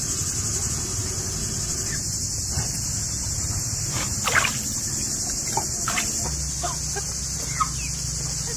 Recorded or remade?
recorded